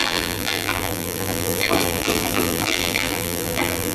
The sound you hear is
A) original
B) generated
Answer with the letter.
B